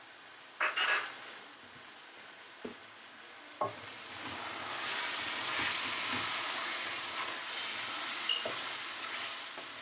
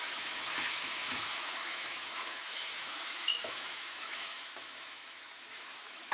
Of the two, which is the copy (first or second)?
second